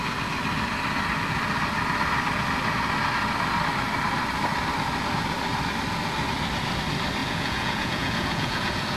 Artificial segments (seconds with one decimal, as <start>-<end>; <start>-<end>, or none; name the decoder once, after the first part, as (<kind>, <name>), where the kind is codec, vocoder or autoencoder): 7.2-9.0 (vocoder, Vocos)